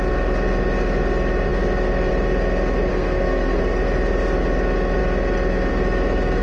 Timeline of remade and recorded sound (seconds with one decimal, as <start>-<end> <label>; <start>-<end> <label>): 0.0-2.9 recorded; 2.9-3.6 remade; 3.6-6.4 recorded